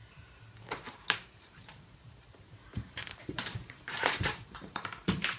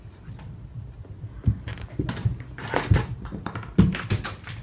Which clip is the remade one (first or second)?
first